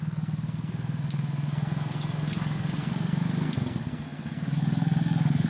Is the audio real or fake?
fake